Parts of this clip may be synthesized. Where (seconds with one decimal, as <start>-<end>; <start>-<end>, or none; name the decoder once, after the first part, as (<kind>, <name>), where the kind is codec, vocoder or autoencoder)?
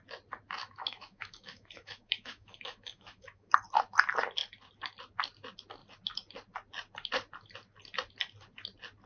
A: 0.6-3.5 (autoencoder, DAC-VAE)